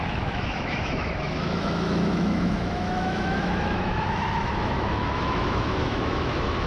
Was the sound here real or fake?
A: fake